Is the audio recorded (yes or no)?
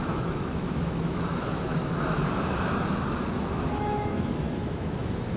no